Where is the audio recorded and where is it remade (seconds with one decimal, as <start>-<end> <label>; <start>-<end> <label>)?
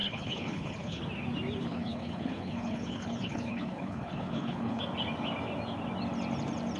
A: 0.0-1.0 remade; 1.0-1.6 recorded; 1.6-4.8 remade; 4.8-6.8 recorded